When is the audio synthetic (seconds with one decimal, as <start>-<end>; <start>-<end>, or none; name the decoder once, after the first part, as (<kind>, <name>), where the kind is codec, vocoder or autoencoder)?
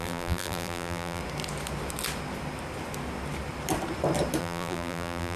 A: 0.0-1.2 (vocoder, BigVGAN v2); 4.4-5.4